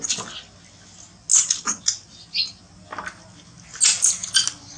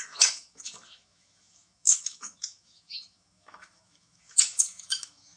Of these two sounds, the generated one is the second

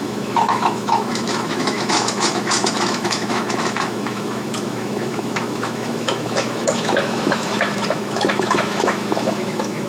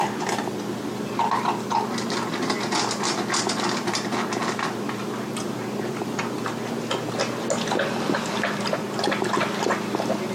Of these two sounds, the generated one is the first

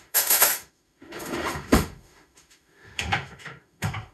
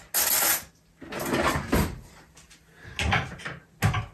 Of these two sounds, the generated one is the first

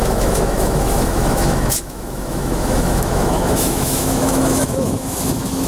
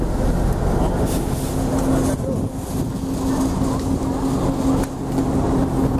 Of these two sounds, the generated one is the first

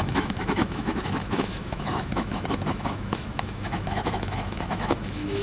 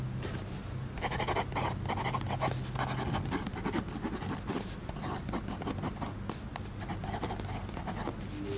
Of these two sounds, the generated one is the first